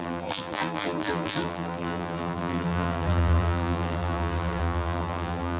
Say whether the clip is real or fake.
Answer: fake